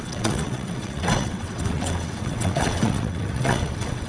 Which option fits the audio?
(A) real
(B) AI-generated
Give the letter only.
B